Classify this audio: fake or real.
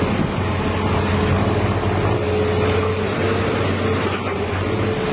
real